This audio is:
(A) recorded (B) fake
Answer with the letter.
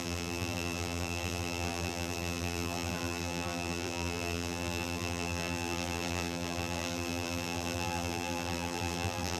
B